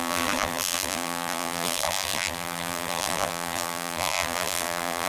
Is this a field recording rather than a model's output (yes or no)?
no